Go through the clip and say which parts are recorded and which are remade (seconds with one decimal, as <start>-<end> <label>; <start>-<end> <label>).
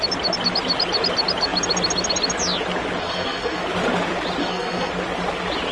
0.0-3.0 recorded; 3.0-3.6 remade; 3.6-4.4 recorded; 4.4-4.9 remade; 4.9-5.7 recorded